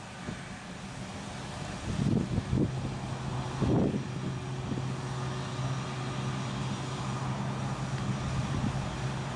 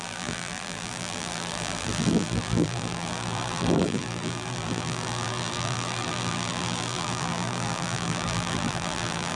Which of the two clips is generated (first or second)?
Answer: second